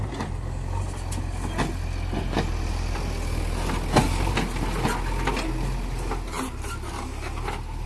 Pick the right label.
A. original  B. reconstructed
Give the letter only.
A